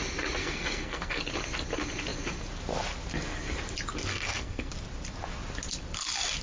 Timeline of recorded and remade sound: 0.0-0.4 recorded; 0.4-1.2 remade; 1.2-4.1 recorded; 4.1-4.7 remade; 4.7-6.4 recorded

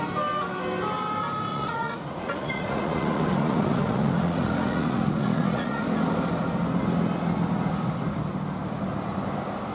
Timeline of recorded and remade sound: 0.0-1.5 recorded; 1.5-5.8 remade; 5.8-9.7 recorded

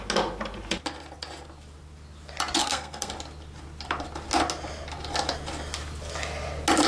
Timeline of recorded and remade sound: 0.0-2.6 recorded; 2.6-3.1 remade; 3.1-6.9 recorded